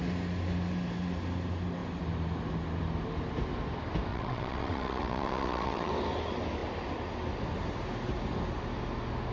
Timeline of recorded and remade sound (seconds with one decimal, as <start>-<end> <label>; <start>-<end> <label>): 0.0-4.1 recorded; 4.1-5.9 remade; 5.9-9.3 recorded